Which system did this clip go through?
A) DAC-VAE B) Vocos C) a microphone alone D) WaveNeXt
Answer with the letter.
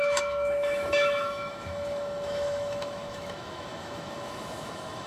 A